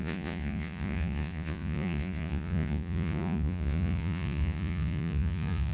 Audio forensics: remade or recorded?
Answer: remade